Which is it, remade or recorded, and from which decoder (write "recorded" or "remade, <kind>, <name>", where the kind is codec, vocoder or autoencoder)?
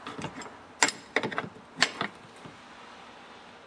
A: recorded